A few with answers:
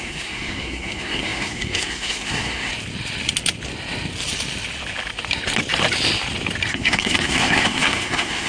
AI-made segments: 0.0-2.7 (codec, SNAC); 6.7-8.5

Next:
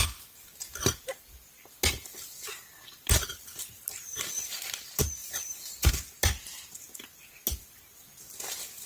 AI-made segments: 5.2-5.9 (vocoder, BigVGAN v2)

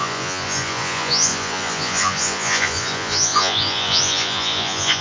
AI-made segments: 0.0-5.0 (vocoder, Vocos)

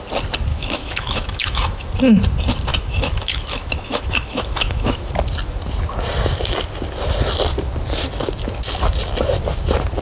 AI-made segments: 0.5-1.9 (autoencoder, DAC-VAE); 2.7-5.1

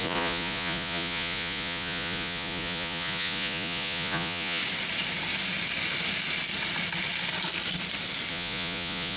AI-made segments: 0.0-4.6 (vocoder, Vocos); 8.3-9.2

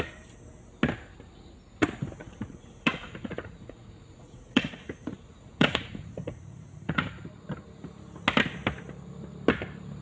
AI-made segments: 2.2-7.0 (vocoder, Vocos)

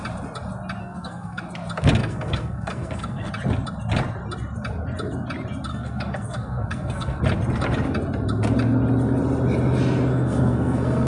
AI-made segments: 0.8-1.4 (codec, SNAC); 2.0-3.3; 5.7-7.2; 10.1-11.1

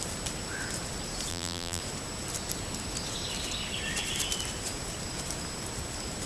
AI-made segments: 1.3-1.8 (vocoder, BigVGAN v2)